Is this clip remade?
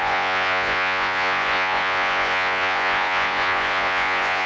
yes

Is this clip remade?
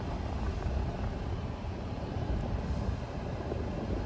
no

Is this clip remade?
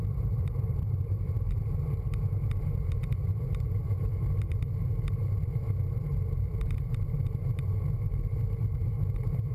yes